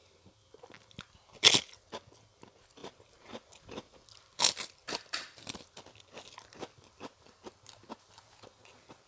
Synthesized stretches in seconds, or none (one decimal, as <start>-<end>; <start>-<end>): none